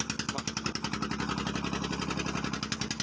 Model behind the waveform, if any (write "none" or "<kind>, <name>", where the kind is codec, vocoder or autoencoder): none